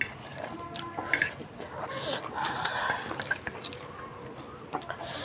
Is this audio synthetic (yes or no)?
no